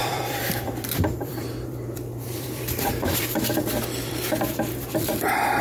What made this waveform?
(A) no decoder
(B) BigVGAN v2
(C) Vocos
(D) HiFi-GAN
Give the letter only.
B